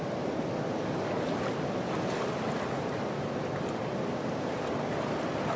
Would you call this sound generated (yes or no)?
no